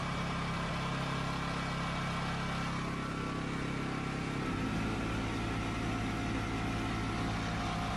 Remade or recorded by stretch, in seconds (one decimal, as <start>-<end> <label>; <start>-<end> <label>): 0.0-0.7 remade; 0.7-8.0 recorded